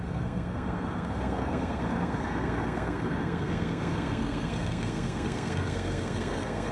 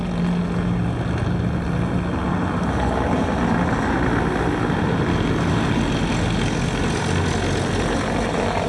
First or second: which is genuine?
second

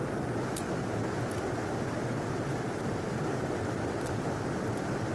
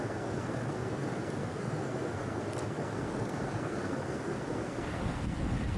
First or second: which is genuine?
first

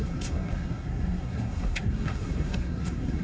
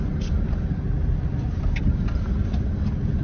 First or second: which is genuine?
second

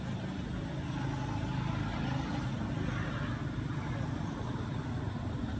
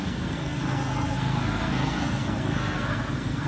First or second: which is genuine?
first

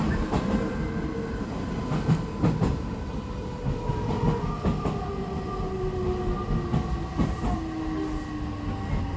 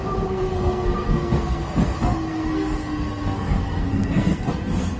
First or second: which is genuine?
first